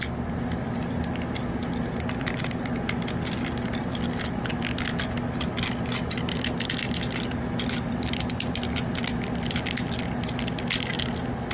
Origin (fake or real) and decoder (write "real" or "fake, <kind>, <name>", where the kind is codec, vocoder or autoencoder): real